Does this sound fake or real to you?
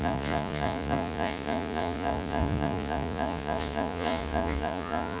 fake